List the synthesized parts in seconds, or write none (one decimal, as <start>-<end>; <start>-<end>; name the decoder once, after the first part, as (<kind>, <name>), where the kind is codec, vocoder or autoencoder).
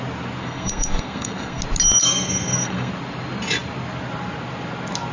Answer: 0.4-1.6 (codec, SNAC); 2.0-2.9